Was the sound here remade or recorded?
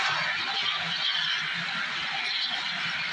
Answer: recorded